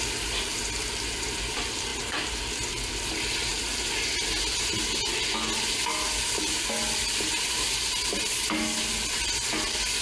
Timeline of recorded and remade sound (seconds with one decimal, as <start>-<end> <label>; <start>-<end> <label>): 0.0-10.0 recorded